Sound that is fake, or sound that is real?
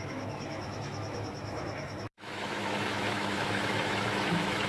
fake